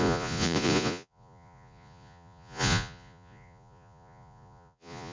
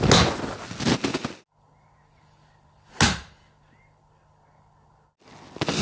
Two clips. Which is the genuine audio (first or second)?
second